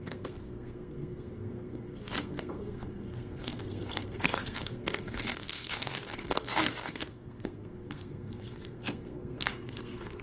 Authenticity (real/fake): fake